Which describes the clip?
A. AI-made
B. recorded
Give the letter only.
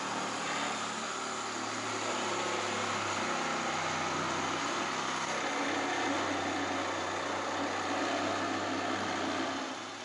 B